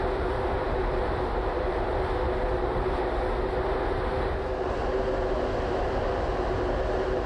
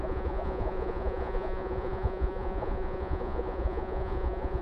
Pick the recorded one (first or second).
first